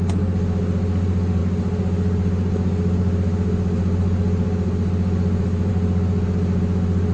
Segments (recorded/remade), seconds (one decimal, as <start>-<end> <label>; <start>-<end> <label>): 0.0-7.1 recorded